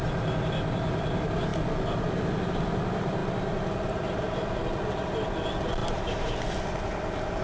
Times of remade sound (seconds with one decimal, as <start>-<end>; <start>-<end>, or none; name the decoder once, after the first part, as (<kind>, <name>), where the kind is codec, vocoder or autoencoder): 0.0-3.2 (vocoder, BigVGAN v2); 3.9-7.4